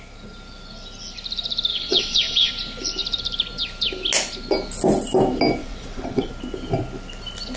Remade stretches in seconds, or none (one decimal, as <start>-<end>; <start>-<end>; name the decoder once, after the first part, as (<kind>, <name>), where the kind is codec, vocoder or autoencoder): 1.7-2.5 (vocoder, WaveNeXt); 5.6-6.3